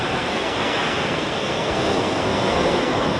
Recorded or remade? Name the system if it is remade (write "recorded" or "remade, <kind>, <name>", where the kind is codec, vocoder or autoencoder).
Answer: remade, codec, SNAC